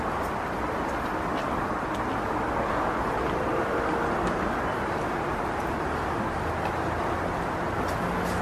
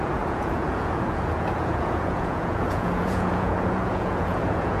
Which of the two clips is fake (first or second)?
second